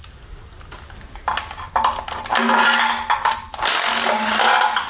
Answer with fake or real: real